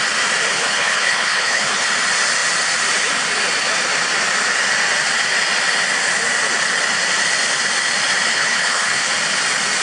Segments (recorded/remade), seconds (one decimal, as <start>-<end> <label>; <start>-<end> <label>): 0.0-0.5 recorded; 0.5-1.9 remade; 1.9-8.3 recorded; 8.3-9.1 remade; 9.1-9.8 recorded